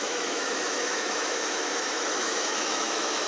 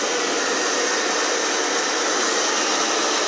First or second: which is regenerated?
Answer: first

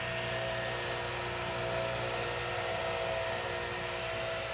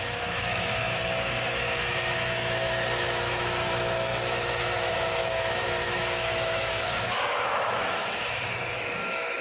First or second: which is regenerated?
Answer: second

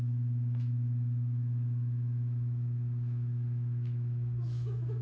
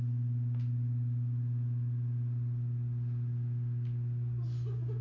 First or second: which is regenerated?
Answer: first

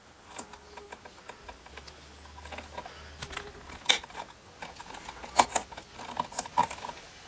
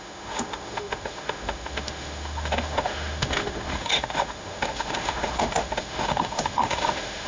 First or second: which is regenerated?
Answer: second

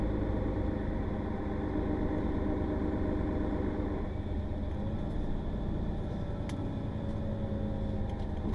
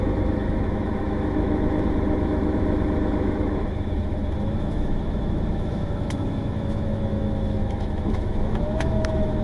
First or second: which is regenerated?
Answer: second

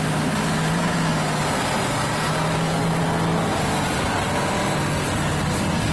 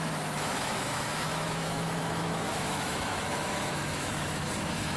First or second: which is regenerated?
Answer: second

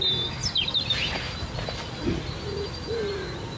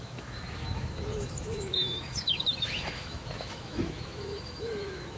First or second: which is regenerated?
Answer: second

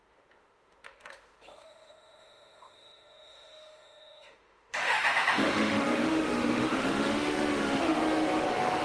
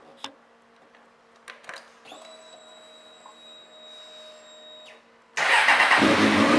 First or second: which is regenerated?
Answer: first